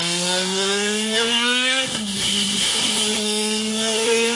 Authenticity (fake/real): fake